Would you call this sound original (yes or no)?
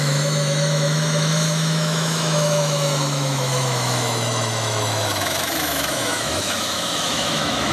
no